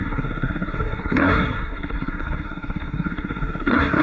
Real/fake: fake